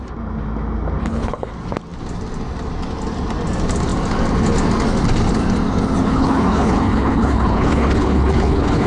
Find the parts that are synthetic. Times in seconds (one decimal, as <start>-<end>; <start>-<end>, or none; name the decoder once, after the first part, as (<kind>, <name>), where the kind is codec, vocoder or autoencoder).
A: 1.0-1.5 (codec, HILCodec); 6.0-8.9